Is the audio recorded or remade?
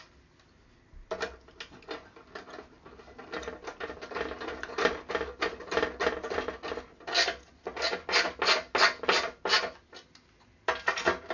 recorded